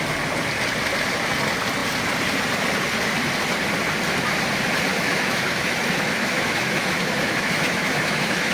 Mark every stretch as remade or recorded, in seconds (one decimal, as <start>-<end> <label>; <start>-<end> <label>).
0.0-4.9 recorded; 4.9-8.5 remade